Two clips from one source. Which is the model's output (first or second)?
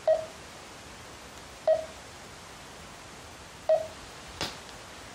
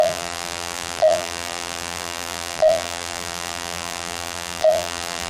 second